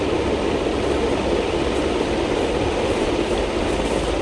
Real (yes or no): yes